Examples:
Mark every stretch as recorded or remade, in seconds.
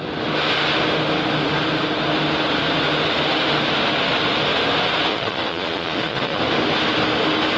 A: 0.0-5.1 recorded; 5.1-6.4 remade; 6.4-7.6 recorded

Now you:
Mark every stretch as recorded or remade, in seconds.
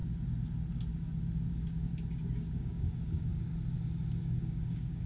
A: 0.0-1.5 recorded; 1.5-1.9 remade; 1.9-2.5 recorded; 2.5-3.5 remade; 3.5-4.2 recorded; 4.2-5.1 remade